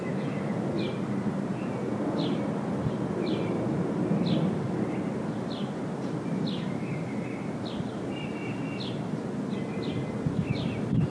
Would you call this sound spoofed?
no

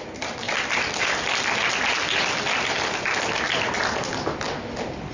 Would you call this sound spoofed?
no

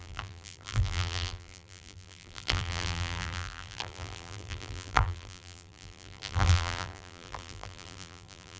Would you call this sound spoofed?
yes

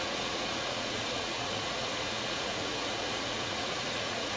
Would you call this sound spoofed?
yes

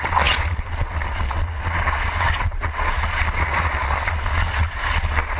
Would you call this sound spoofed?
yes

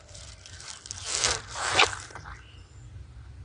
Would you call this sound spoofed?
no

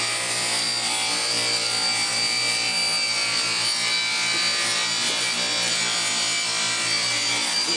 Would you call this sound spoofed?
no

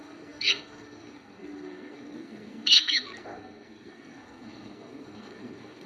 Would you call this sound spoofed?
yes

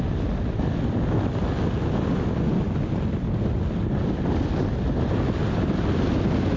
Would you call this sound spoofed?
no